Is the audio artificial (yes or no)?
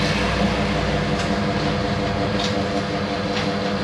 no